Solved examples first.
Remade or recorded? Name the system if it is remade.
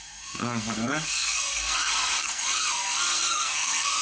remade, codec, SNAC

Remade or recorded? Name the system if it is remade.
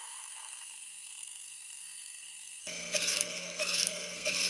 remade, codec, SNAC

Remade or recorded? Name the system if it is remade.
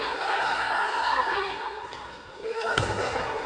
remade, codec, SNAC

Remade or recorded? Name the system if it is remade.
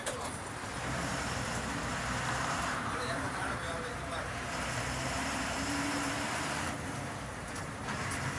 remade, vocoder, BigVGAN v2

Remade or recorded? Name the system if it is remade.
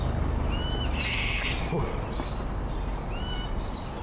recorded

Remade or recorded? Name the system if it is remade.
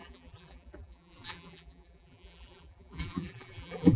remade, vocoder, BigVGAN v2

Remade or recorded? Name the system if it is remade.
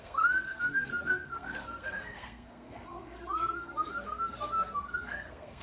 remade, codec, SNAC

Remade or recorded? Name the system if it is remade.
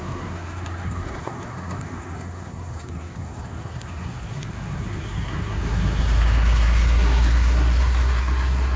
remade, codec, SNAC